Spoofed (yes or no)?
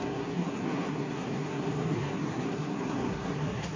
yes